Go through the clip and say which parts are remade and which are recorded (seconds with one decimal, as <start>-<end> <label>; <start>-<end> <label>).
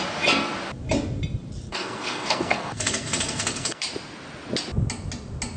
0.0-1.7 recorded; 1.7-3.8 remade; 3.8-5.6 recorded